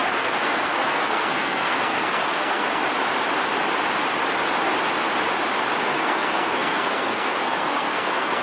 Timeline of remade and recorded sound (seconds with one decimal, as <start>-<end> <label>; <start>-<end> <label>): 0.0-2.8 remade; 2.8-5.8 recorded; 5.8-8.4 remade